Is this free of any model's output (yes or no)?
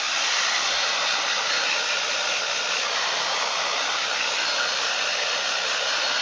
yes